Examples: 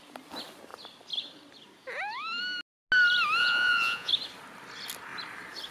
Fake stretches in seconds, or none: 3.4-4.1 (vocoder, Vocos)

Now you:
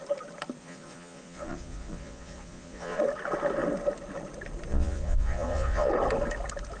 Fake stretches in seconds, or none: 0.6-3.0 (vocoder, Vocos); 4.7-5.9